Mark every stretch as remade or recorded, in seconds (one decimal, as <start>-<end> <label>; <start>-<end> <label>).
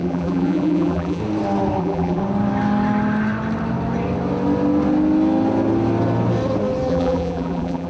0.0-1.2 remade; 1.2-1.8 recorded; 1.8-2.2 remade; 2.2-6.9 recorded; 6.9-7.9 remade